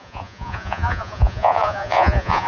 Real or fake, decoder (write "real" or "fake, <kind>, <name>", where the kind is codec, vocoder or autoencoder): fake, vocoder, Vocos